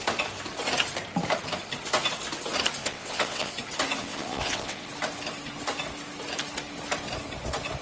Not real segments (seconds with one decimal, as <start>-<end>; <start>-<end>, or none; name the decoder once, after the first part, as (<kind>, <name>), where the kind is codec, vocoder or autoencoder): 2.8-3.5 (vocoder, WaveNeXt); 4.0-4.9